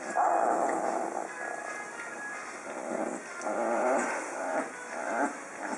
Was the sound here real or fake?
real